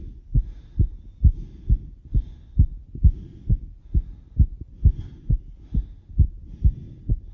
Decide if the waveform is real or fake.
real